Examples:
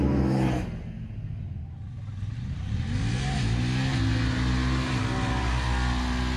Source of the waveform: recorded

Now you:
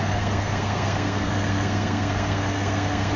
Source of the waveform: remade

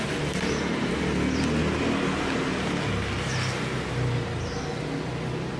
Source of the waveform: recorded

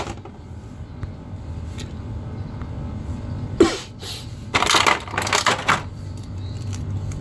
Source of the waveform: recorded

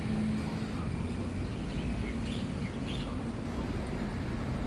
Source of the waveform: recorded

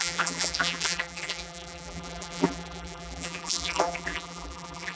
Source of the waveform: remade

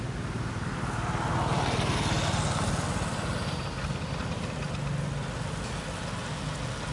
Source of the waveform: recorded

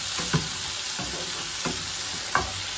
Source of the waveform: recorded